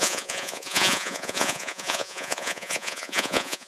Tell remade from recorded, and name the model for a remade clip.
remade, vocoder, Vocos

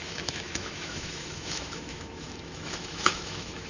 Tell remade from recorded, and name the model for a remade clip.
remade, autoencoder, DAC-VAE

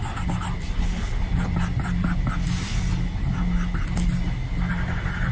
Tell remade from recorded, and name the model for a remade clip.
recorded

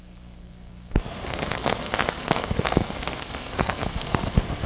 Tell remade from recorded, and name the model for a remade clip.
remade, codec, SNAC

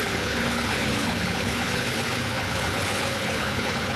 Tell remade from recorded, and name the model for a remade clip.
remade, codec, HILCodec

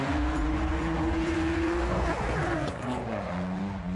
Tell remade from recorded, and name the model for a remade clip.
remade, vocoder, Vocos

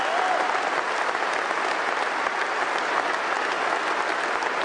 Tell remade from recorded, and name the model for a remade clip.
recorded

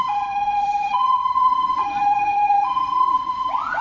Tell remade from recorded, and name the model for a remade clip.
remade, vocoder, Vocos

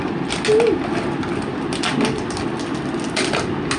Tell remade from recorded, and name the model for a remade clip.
recorded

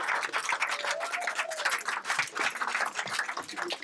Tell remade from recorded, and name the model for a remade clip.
recorded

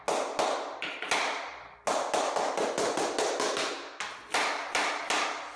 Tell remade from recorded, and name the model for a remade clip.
recorded